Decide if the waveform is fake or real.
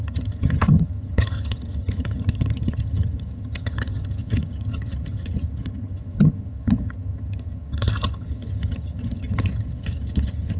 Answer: fake